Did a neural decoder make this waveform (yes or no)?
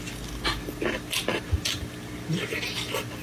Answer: yes